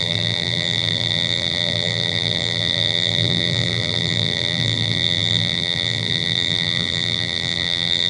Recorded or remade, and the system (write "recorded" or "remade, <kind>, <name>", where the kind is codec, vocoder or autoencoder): remade, vocoder, BigVGAN v2